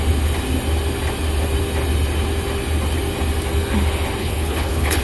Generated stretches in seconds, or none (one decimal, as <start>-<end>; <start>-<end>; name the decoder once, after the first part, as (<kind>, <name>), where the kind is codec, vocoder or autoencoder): 4.2-5.0 (codec, HILCodec)